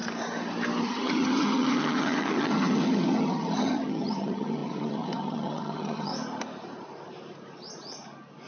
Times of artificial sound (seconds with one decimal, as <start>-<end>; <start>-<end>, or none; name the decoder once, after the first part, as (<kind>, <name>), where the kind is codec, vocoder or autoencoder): 0.8-6.1 (vocoder, HiFi-GAN)